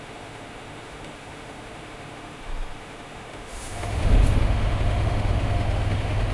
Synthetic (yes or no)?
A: yes